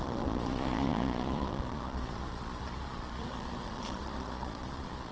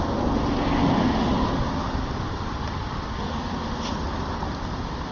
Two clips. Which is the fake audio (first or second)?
first